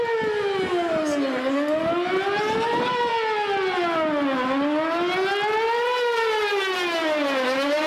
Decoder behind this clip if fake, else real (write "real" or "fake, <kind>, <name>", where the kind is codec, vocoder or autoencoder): real